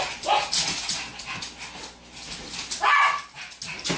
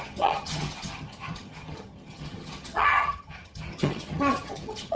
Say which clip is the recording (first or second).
first